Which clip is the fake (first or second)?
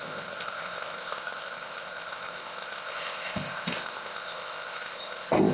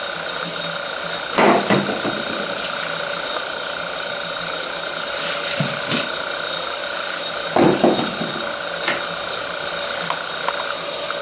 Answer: first